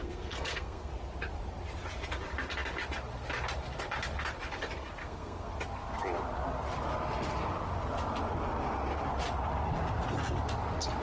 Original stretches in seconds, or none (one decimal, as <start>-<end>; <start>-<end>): 0.9-5.0; 5.5-11.0